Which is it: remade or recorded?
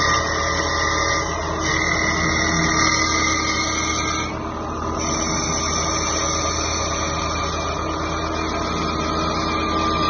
recorded